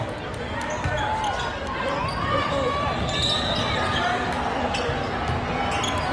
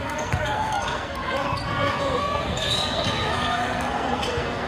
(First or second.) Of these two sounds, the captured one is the first